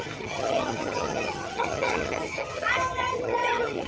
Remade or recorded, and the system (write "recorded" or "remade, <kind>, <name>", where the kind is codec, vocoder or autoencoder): remade, vocoder, HiFi-GAN